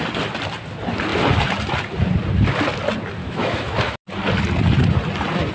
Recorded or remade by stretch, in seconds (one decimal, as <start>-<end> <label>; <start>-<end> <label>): 0.0-3.2 recorded; 3.2-4.0 remade; 4.0-5.5 recorded

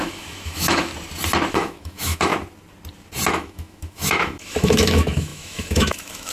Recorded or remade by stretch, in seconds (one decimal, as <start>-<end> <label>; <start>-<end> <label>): 0.0-0.9 remade; 0.9-1.5 recorded; 1.5-2.3 remade; 2.3-3.3 recorded; 3.3-6.3 remade

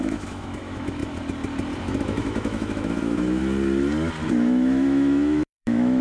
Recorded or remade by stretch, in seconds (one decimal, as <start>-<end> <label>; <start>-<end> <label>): 0.0-1.0 remade; 1.0-1.8 recorded; 1.8-3.4 remade; 3.4-4.3 recorded; 4.3-6.0 remade

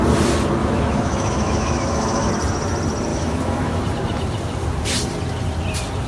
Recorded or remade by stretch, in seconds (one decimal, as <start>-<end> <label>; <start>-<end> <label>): 0.0-0.6 recorded; 0.6-2.3 remade; 2.3-3.1 recorded; 3.1-3.8 remade; 3.8-6.1 recorded